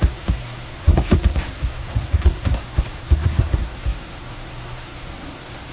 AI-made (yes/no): yes